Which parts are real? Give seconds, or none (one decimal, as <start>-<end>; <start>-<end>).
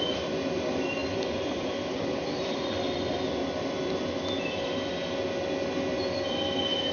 0.0-1.0; 3.2-6.9